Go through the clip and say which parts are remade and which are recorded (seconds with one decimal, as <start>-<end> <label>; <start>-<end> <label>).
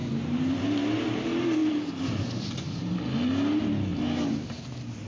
0.0-0.6 remade; 0.6-1.6 recorded; 1.6-3.0 remade; 3.0-3.9 recorded; 3.9-4.6 remade; 4.6-5.1 recorded